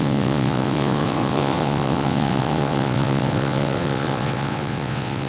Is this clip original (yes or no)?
no